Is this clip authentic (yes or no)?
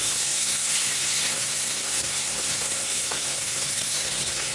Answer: no